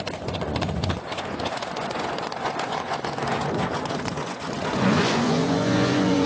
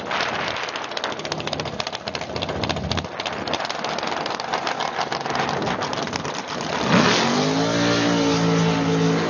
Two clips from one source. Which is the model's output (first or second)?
first